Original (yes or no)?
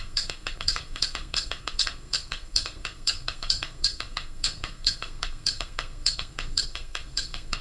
no